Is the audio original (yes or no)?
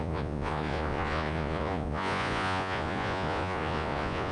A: no